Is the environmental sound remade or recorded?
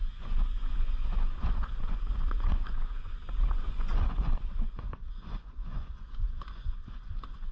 remade